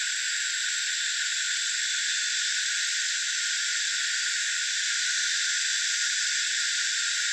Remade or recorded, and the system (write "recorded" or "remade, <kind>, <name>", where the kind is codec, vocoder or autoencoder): recorded